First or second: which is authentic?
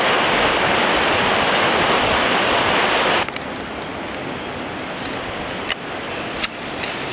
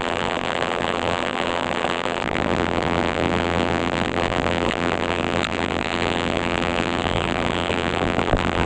first